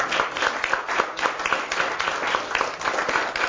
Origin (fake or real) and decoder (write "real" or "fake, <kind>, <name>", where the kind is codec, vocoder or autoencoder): real